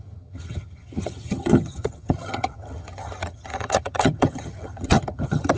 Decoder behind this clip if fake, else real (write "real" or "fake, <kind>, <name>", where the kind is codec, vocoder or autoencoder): fake, vocoder, HiFi-GAN